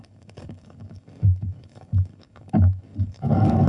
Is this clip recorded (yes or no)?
no